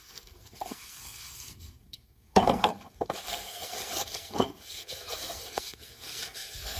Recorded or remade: remade